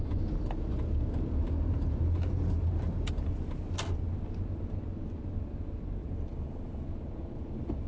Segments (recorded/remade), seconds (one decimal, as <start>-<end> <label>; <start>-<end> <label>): 0.0-7.9 recorded

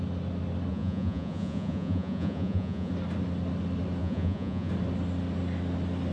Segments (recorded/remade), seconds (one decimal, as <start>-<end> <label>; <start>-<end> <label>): 0.0-0.7 recorded; 0.7-2.9 remade; 2.9-4.0 recorded; 4.0-4.7 remade; 4.7-6.1 recorded